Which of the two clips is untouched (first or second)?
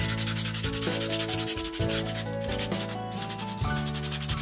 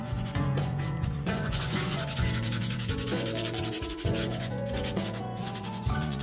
first